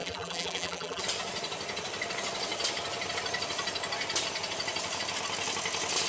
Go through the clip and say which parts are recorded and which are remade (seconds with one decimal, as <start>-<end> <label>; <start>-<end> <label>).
0.0-1.0 remade; 1.0-6.1 recorded